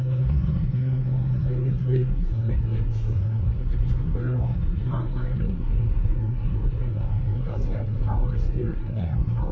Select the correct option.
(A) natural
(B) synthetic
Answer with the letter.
B